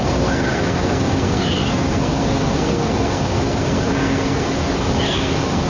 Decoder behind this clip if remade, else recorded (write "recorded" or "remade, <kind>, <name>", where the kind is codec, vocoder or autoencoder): remade, codec, SNAC